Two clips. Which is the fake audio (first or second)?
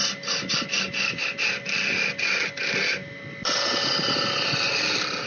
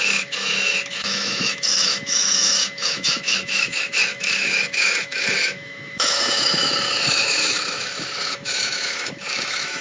second